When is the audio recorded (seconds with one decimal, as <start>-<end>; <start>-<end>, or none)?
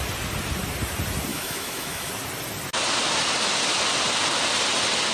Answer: 0.0-1.3; 2.1-5.1